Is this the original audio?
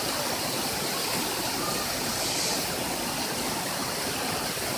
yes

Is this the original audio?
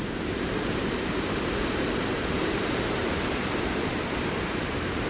no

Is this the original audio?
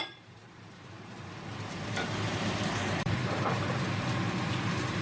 no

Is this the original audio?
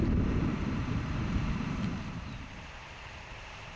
no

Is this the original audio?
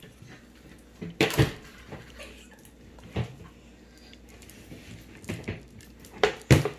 yes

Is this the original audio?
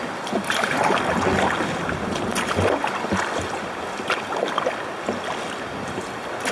yes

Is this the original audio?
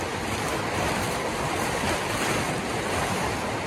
yes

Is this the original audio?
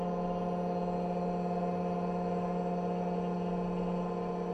yes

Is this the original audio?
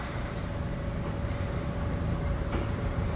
no